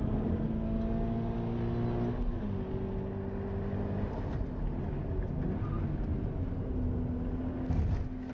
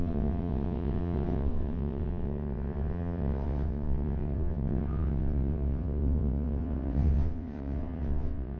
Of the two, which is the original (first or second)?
first